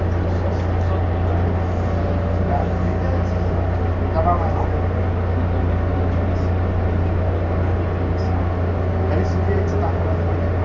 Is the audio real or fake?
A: real